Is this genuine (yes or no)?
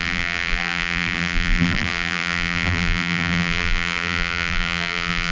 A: no